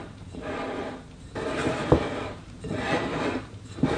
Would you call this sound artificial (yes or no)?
yes